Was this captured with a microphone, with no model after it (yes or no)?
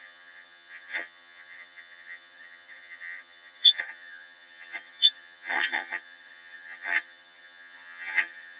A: no